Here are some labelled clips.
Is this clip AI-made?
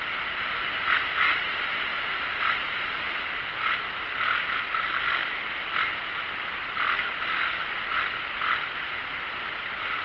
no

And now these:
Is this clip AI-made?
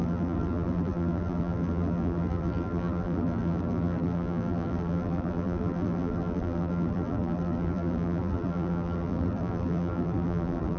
yes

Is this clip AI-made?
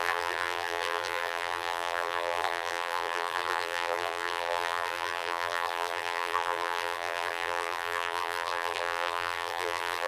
yes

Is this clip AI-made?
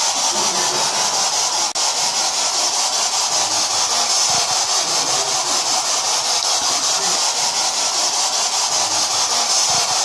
no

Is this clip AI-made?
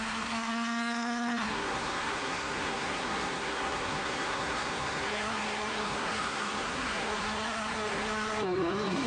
yes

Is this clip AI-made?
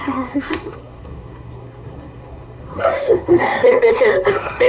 yes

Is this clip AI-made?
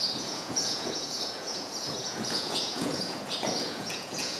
yes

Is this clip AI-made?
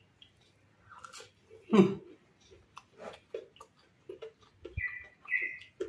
no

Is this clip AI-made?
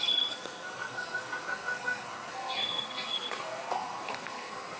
yes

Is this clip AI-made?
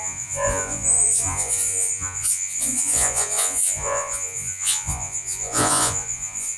yes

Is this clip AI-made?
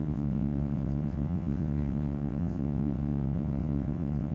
yes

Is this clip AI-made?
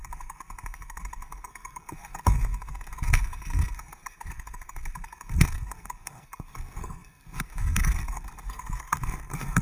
yes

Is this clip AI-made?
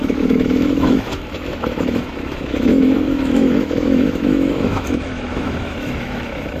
yes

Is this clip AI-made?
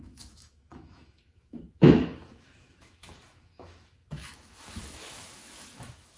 yes